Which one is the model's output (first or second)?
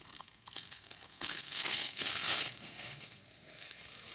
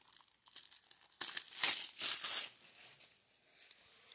first